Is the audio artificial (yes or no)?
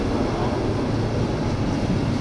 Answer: no